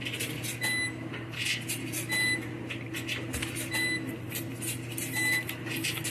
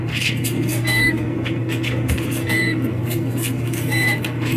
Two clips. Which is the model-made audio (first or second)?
second